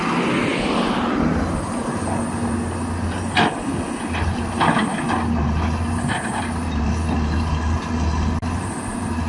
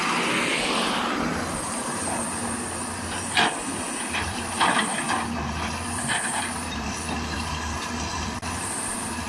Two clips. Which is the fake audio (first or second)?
second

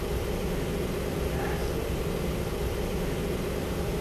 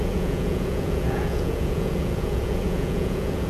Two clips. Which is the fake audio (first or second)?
second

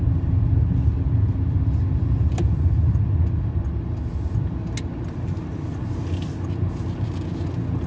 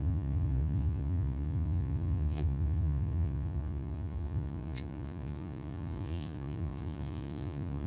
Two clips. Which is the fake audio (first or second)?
second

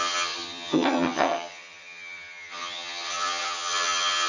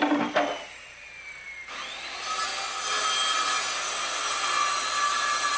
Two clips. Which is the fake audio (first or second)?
first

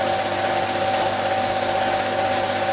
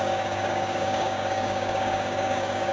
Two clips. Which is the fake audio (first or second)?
second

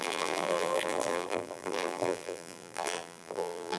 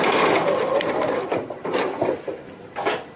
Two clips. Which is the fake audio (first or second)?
first